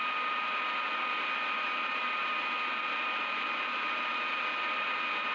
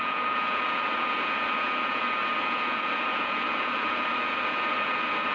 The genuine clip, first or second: first